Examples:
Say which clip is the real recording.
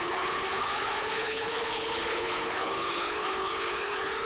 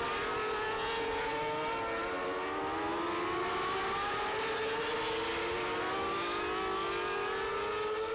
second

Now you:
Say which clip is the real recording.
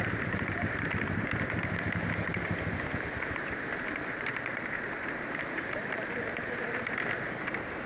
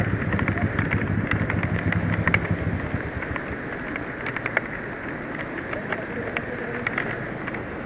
second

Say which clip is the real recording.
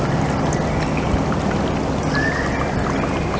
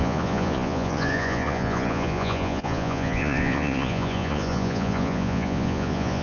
first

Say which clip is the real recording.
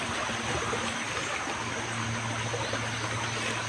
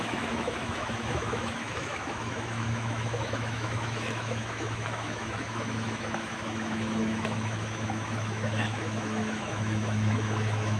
first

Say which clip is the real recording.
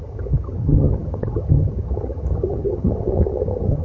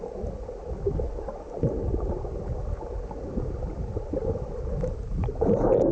second